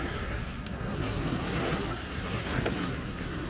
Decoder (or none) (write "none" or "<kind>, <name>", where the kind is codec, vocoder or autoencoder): codec, SNAC